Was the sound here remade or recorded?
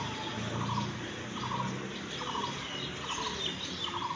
recorded